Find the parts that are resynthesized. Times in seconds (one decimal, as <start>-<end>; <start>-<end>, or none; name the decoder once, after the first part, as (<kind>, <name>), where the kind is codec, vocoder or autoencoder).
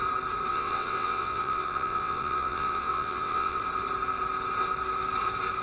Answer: 0.5-3.6 (vocoder, WaveNeXt)